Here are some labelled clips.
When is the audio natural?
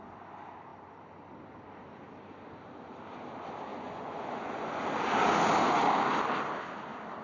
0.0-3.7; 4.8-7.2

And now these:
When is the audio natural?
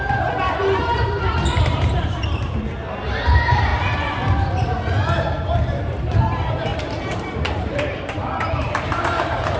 3.7-5.8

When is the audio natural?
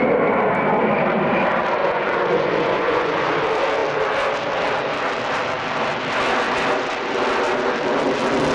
0.0-1.8; 3.3-8.5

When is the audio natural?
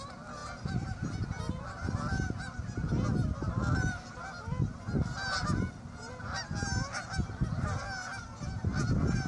0.0-9.3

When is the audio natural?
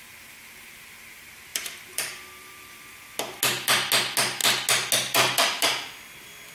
0.0-1.5; 3.0-6.5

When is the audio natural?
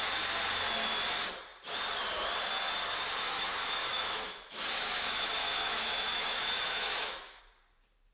0.0-3.2; 7.4-8.1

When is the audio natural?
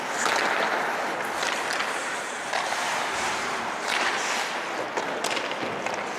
0.0-2.0; 4.1-6.2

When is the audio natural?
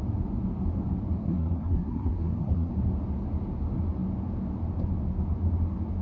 0.0-1.2; 2.7-6.0